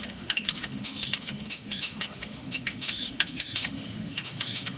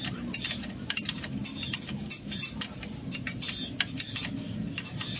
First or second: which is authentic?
second